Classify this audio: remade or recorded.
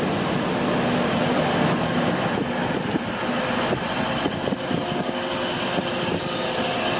recorded